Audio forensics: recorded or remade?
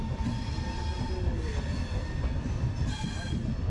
recorded